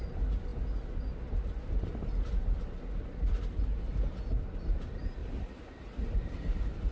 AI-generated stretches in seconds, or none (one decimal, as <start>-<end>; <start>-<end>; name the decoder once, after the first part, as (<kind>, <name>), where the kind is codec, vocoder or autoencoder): none